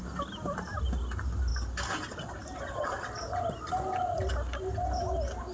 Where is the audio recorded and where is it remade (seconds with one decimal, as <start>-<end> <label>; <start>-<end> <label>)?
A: 0.0-5.5 recorded